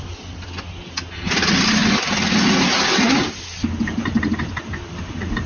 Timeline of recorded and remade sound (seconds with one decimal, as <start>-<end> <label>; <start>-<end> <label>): 0.0-5.5 recorded